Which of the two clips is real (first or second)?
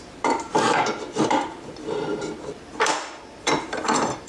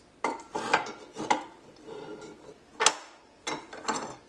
second